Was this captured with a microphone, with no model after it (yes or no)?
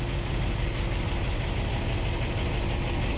yes